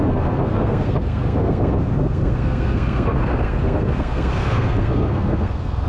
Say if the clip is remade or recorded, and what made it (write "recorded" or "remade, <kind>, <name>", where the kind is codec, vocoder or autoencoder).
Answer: remade, codec, SNAC